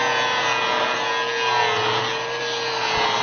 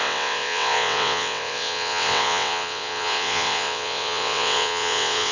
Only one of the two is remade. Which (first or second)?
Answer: second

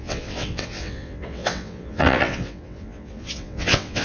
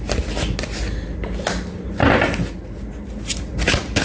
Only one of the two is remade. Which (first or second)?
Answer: first